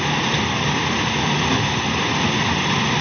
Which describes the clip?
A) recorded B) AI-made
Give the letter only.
A